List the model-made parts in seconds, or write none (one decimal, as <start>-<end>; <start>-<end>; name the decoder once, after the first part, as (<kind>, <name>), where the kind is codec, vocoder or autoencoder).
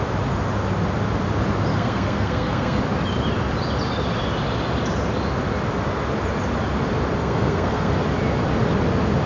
1.7-2.8 (codec, SNAC); 7.2-7.9